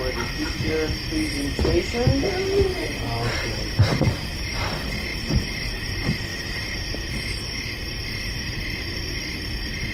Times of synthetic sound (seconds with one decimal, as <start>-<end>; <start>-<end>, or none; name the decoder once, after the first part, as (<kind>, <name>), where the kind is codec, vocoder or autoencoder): 3.9-4.4 (vocoder, BigVGAN v2); 5.1-5.8; 6.3-6.8